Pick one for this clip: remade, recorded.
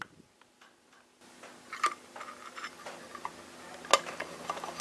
recorded